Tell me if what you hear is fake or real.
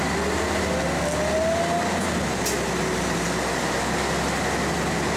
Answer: real